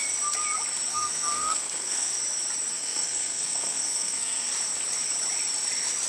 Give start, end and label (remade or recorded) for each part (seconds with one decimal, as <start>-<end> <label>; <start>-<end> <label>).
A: 0.0-0.9 recorded; 0.9-2.1 remade; 2.1-2.7 recorded; 2.7-4.5 remade; 4.5-6.1 recorded